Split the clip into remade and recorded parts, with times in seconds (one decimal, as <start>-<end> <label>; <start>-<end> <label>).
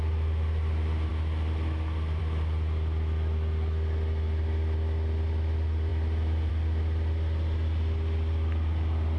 0.0-9.2 recorded